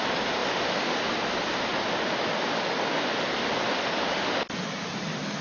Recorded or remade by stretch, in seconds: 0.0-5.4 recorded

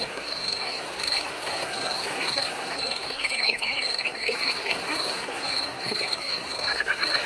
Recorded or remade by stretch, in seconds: 0.0-7.3 remade

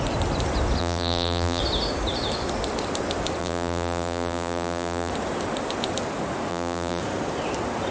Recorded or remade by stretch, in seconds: 0.0-0.8 recorded; 0.8-1.6 remade; 1.6-3.4 recorded; 3.4-5.1 remade; 5.1-6.5 recorded; 6.5-7.0 remade; 7.0-7.9 recorded

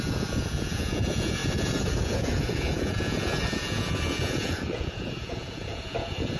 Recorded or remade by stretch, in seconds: 0.0-6.4 remade

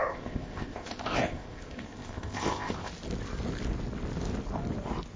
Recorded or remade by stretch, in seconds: 0.0-2.9 remade; 2.9-5.2 recorded